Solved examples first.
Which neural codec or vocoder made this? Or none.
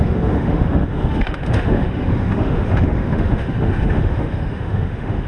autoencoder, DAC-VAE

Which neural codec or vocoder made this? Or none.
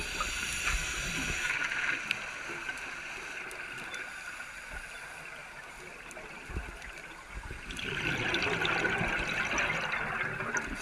none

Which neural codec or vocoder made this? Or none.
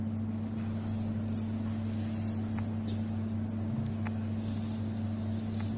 none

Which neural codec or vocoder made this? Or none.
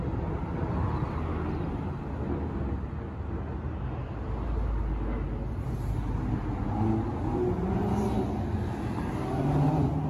none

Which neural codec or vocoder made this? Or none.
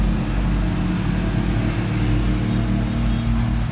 none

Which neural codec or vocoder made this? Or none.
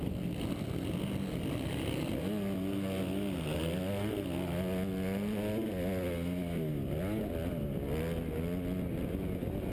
none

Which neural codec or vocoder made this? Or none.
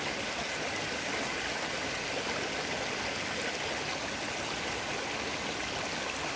none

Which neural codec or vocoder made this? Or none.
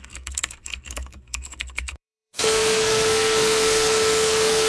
codec, SNAC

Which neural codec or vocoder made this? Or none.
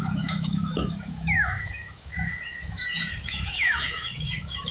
autoencoder, DAC-VAE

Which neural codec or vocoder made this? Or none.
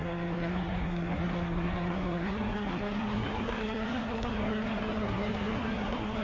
codec, SNAC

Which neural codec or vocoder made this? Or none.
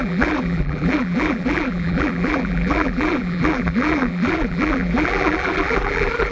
vocoder, BigVGAN v2